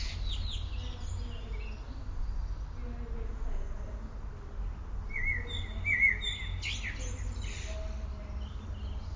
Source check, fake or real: real